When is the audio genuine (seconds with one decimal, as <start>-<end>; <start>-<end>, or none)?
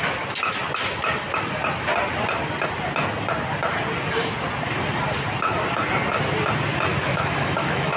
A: 0.0-6.9